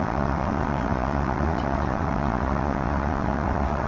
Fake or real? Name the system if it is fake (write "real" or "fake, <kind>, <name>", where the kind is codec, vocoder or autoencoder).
fake, vocoder, WaveNeXt